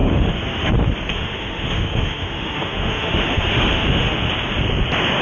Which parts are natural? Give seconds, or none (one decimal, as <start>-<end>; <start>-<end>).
0.7-1.1; 4.2-5.2